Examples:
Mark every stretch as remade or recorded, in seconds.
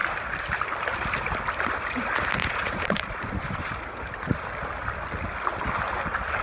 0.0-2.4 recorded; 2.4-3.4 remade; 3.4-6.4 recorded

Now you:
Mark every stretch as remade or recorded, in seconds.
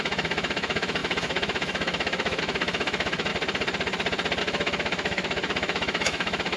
0.0-3.3 remade; 3.3-4.4 recorded; 4.4-6.6 remade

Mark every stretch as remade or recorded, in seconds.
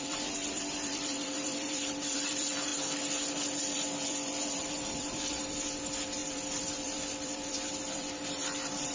0.0-2.7 remade; 2.7-3.6 recorded; 3.6-8.9 remade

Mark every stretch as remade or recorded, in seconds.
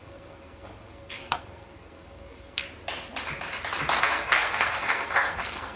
0.0-2.6 remade; 2.6-4.0 recorded; 4.0-5.8 remade